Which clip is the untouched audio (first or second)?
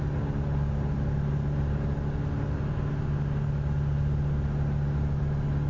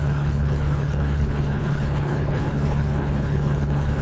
first